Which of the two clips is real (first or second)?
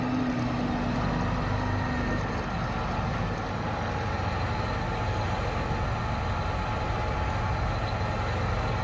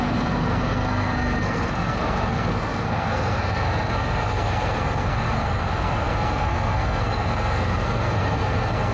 first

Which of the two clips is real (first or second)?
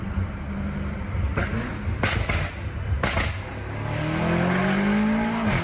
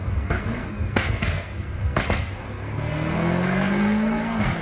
first